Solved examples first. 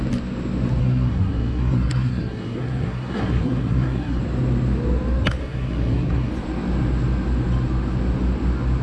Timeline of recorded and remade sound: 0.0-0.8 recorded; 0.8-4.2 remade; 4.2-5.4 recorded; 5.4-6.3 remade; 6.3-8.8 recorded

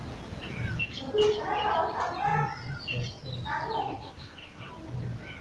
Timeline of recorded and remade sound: 0.0-3.8 recorded; 3.8-4.7 remade; 4.7-5.4 recorded

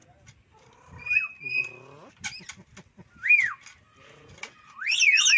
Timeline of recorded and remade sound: 0.0-5.4 recorded

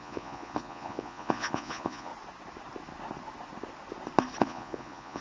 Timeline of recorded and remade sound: 0.0-2.1 remade; 2.1-4.4 recorded; 4.4-5.2 remade

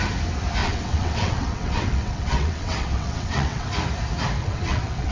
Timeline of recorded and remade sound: 0.0-0.6 recorded; 0.6-3.7 remade; 3.7-4.4 recorded; 4.4-5.1 remade

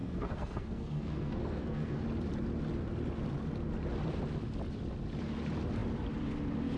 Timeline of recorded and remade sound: 0.0-2.0 remade; 2.0-6.8 recorded

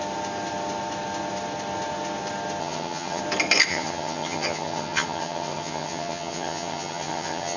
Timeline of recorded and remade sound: 0.0-2.6 recorded; 2.6-3.2 remade; 3.2-3.7 recorded; 3.7-7.6 remade

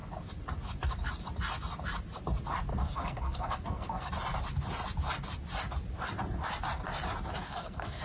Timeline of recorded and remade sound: 0.0-2.7 recorded; 2.7-4.1 remade; 4.1-7.4 recorded; 7.4-8.0 remade